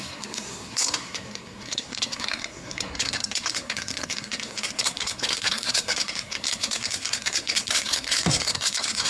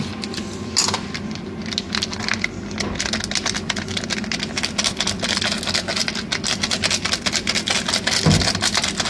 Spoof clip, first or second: first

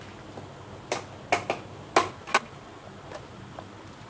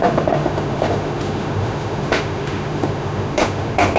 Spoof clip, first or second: second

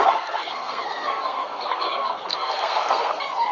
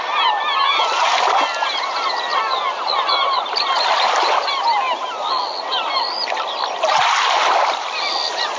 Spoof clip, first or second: first